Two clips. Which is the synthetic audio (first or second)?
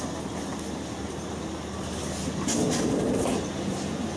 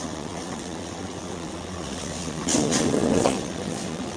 second